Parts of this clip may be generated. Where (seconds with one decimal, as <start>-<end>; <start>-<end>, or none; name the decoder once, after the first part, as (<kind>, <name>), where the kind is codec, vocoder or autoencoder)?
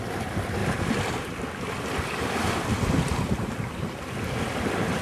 none